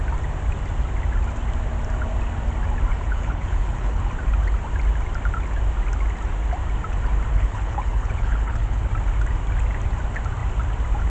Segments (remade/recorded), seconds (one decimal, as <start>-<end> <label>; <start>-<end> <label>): 0.0-2.9 recorded; 2.9-4.0 remade; 4.0-7.3 recorded; 7.3-8.9 remade; 8.9-11.1 recorded